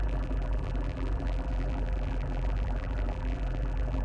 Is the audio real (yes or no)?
no